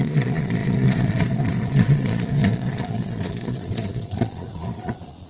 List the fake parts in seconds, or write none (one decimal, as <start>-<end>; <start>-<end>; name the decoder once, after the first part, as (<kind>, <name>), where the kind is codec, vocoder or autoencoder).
0.0-5.3 (vocoder, Vocos)